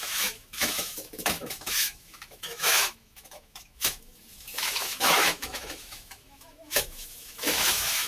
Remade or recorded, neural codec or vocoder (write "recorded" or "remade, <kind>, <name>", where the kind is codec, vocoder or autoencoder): remade, autoencoder, DAC-VAE